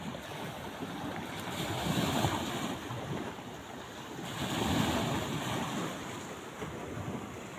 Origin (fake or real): fake